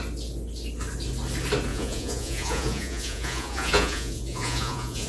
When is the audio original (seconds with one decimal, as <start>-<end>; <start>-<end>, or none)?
0.0-1.7